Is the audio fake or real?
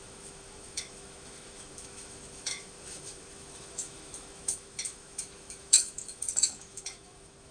fake